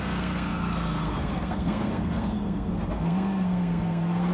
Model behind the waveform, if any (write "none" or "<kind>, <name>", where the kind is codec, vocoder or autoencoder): codec, SNAC